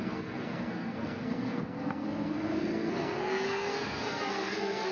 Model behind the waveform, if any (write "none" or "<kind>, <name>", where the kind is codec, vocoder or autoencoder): codec, SNAC